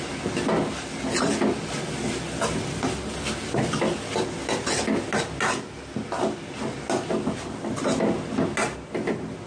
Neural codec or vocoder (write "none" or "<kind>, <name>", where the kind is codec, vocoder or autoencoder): none